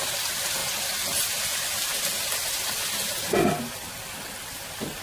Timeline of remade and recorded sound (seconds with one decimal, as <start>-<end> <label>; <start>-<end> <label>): 0.0-5.0 recorded